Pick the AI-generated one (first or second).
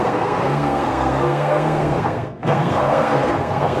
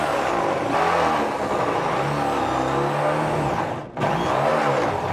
first